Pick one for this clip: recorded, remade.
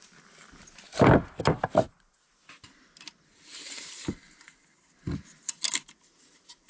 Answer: recorded